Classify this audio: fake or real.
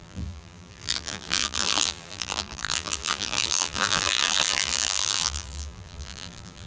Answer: fake